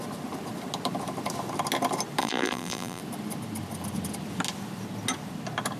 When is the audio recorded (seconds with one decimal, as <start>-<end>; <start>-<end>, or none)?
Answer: 0.0-2.2; 3.0-5.8